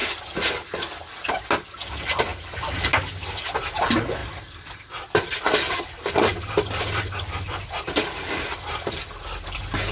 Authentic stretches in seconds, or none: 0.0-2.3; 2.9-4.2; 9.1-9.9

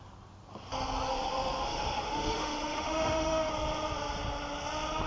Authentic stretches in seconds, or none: 0.0-1.1; 3.5-5.1

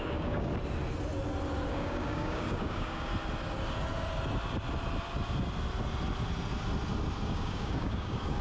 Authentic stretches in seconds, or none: 0.5-1.7; 3.1-7.2

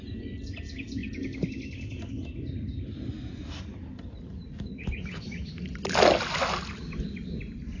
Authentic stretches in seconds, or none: 0.0-7.8

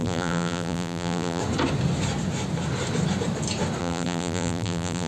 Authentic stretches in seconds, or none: 1.4-3.8

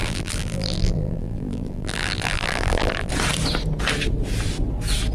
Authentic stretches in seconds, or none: 3.1-5.1